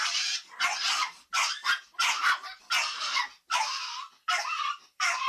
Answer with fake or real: real